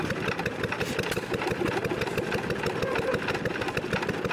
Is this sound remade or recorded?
recorded